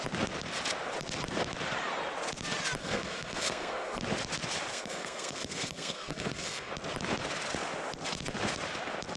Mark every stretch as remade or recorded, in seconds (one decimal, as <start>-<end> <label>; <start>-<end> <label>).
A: 0.0-2.8 recorded; 2.8-4.0 remade; 4.0-4.7 recorded; 4.7-6.7 remade; 6.7-9.2 recorded